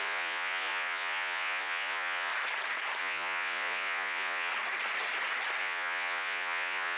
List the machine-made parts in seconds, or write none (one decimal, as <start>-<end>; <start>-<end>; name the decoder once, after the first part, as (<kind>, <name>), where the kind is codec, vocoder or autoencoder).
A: 0.0-2.3 (vocoder, Vocos); 3.0-4.5; 5.6-7.0